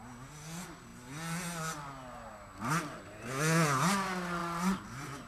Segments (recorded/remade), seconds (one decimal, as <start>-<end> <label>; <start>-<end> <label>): 0.0-5.3 recorded